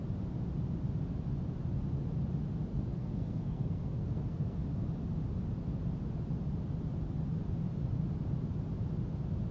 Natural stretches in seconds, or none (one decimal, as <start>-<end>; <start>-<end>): 0.0-2.7; 4.6-9.5